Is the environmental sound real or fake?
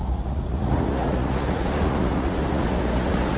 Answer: fake